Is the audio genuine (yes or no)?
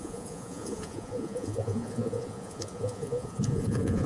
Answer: no